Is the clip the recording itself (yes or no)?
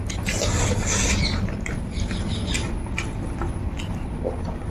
yes